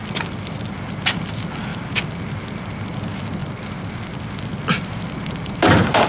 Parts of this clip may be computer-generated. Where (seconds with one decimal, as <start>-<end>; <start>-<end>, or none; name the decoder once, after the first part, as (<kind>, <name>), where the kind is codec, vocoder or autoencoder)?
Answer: 0.0-1.7 (vocoder, BigVGAN v2); 2.8-3.4; 4.8-6.1